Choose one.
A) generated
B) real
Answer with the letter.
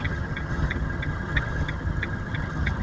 A